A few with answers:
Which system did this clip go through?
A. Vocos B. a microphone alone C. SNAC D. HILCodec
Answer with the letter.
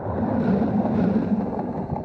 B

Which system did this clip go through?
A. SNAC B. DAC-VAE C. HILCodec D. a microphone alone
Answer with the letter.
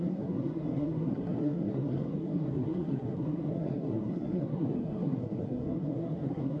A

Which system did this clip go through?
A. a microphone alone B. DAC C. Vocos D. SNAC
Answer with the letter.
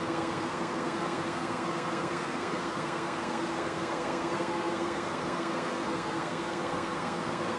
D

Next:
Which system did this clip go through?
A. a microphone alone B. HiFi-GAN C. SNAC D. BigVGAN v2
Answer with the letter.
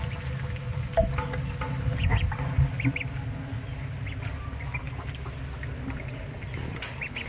A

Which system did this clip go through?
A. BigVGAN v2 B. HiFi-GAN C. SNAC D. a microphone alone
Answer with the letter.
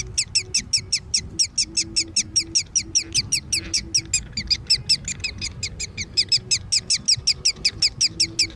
D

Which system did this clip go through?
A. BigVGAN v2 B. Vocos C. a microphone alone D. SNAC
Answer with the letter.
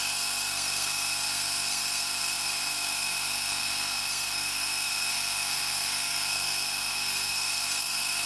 D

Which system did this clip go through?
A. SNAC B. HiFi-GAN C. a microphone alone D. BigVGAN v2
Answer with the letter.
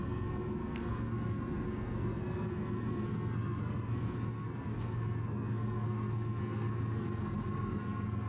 A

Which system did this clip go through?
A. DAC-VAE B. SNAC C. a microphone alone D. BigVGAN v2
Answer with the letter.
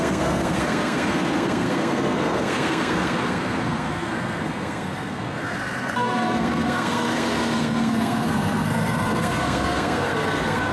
B